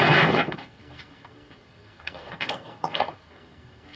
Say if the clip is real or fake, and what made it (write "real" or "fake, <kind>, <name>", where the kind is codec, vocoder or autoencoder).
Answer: fake, codec, SNAC